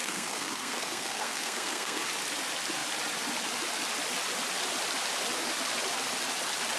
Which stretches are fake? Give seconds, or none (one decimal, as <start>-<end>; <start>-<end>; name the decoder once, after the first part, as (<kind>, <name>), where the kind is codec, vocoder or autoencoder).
0.0-2.0 (codec, SNAC)